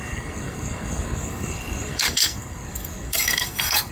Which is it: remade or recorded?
remade